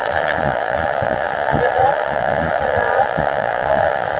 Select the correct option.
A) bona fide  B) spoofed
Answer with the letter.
B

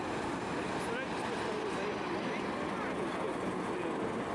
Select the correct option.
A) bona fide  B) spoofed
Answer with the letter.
A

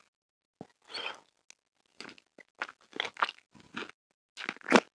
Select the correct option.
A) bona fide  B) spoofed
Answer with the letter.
A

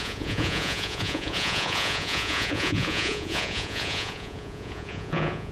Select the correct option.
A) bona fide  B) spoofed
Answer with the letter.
B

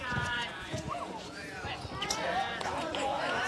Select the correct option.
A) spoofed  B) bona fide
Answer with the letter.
A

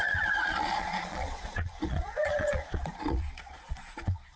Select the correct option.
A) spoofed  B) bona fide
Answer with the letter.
A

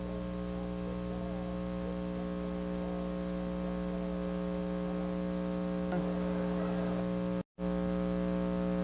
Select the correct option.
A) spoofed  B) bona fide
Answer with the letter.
B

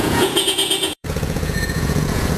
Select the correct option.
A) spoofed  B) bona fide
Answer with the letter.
A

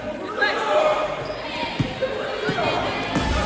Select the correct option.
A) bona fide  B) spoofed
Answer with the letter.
A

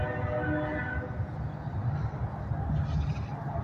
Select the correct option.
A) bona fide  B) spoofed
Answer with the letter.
A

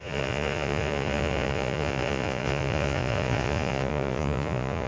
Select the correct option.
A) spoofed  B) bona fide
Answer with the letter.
A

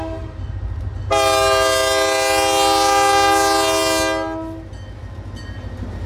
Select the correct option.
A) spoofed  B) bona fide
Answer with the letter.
B